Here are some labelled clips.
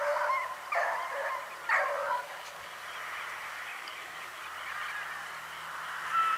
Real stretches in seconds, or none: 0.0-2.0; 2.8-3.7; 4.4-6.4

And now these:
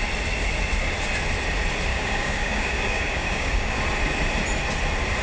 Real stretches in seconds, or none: 0.0-1.9; 3.8-5.2